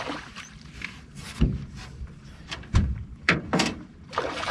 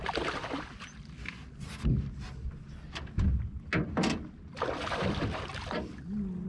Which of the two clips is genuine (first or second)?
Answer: second